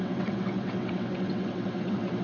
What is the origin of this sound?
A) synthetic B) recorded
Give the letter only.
A